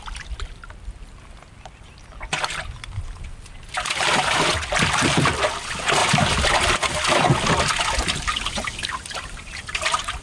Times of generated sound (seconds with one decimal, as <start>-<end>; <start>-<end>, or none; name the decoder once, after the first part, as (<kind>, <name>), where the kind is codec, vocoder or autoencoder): none